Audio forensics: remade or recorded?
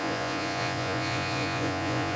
remade